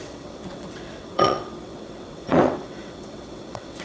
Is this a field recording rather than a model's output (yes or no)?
no